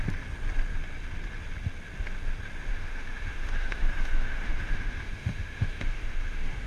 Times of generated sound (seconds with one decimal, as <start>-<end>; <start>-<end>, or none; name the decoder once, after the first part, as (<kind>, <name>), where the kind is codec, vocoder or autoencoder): 2.7-6.7 (autoencoder, DAC-VAE)